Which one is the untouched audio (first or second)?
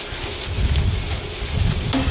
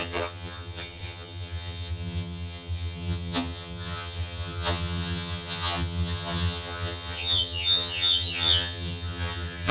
first